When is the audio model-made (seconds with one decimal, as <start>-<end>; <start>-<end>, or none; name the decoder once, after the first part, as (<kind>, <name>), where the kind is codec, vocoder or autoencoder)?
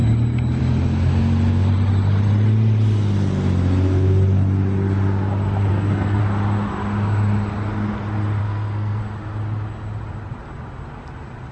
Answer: 5.7-6.2 (codec, SNAC); 8.4-9.0